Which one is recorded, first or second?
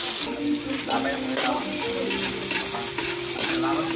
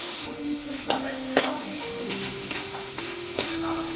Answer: first